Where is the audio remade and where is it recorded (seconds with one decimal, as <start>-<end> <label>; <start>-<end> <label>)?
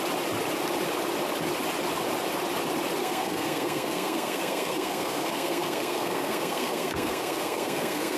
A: 0.0-3.0 recorded; 3.0-8.2 remade